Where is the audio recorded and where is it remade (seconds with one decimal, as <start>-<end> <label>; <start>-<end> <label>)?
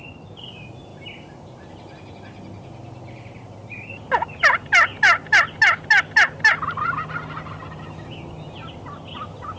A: 0.0-9.6 recorded